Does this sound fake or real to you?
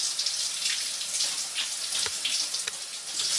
real